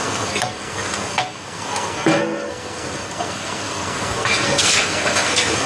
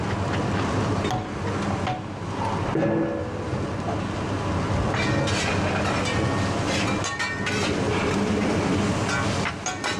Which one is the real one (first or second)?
second